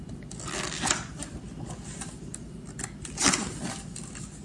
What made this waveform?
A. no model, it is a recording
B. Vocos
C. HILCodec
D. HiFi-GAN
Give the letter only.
A